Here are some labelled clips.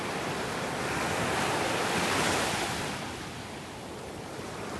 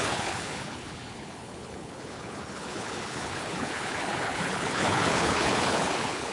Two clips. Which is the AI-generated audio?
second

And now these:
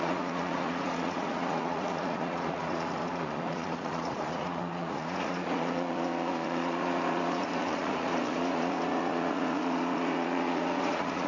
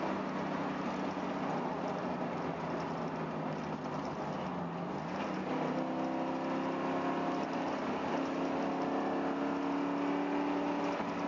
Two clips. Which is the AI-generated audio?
first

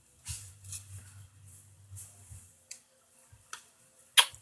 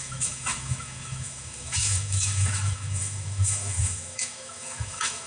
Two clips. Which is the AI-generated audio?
second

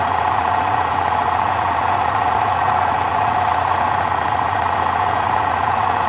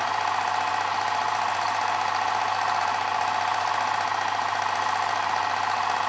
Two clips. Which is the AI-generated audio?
first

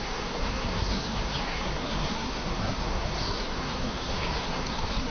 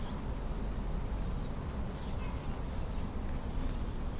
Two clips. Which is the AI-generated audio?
first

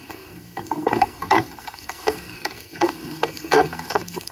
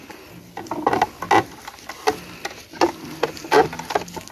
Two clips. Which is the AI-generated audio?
first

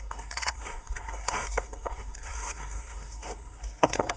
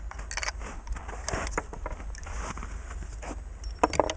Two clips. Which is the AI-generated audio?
first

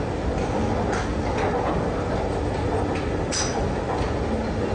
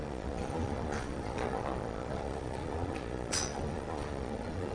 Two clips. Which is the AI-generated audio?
second